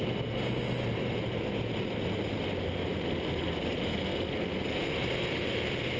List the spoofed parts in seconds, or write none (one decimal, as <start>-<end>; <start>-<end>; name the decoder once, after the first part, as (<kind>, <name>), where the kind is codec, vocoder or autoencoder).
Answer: none